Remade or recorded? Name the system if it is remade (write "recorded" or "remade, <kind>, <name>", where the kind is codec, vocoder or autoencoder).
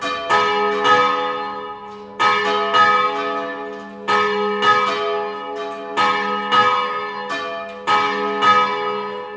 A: recorded